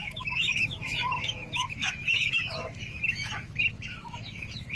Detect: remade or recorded remade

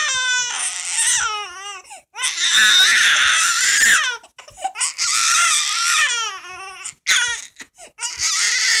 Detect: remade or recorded recorded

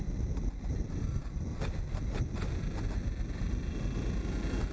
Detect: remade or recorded recorded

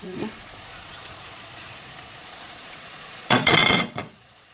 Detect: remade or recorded remade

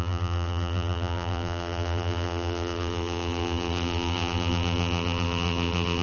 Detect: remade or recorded remade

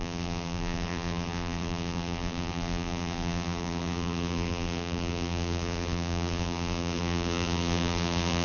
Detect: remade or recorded remade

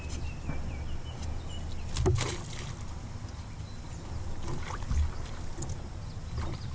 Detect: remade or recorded recorded